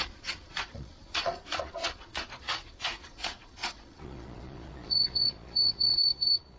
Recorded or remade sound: remade